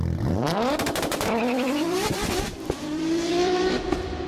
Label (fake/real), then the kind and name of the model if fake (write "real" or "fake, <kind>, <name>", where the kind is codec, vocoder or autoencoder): fake, vocoder, BigVGAN v2